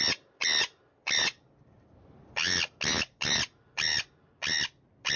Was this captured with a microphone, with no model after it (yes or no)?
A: yes